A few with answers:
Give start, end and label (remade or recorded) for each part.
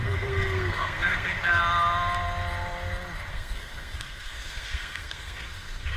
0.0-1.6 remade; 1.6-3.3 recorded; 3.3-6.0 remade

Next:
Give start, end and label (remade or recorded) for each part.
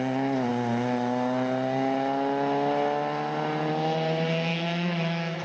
0.0-4.5 recorded; 4.5-5.4 remade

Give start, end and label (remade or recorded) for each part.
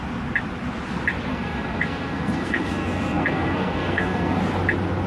0.0-1.3 recorded; 1.3-4.4 remade; 4.4-5.1 recorded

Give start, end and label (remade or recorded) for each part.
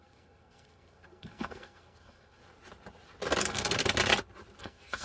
0.0-2.4 remade; 2.4-3.4 recorded; 3.4-3.8 remade; 3.8-4.6 recorded; 4.6-5.0 remade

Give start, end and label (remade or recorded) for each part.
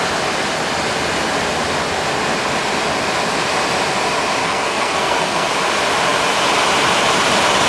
0.0-4.4 recorded; 4.4-5.5 remade; 5.5-7.7 recorded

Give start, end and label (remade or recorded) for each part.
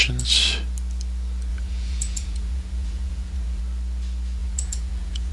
0.0-1.5 recorded; 1.5-3.6 remade; 3.6-4.4 recorded; 4.4-5.3 remade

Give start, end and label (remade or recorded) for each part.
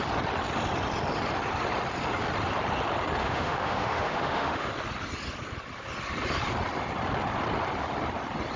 0.0-3.2 recorded; 3.2-4.7 remade; 4.7-8.6 recorded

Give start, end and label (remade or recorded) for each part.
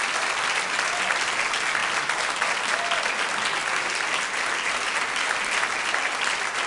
0.0-6.7 recorded